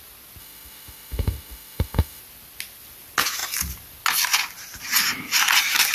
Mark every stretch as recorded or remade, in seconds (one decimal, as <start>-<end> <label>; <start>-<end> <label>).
0.0-0.4 recorded; 0.4-2.2 remade; 2.2-5.9 recorded